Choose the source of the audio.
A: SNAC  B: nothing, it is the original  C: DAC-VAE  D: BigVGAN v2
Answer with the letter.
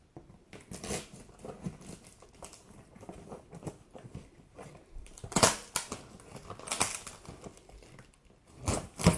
B